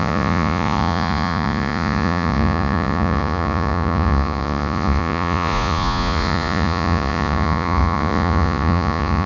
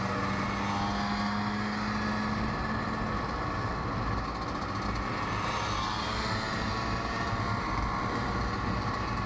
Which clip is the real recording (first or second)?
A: second